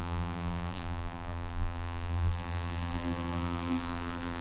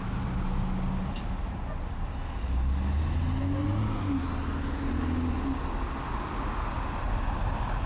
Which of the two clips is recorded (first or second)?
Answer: second